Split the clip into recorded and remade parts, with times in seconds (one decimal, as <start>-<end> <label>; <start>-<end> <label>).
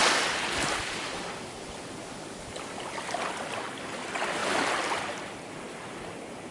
0.0-4.4 remade; 4.4-5.9 recorded; 5.9-6.5 remade